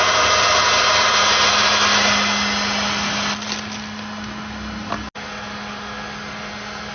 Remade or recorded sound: recorded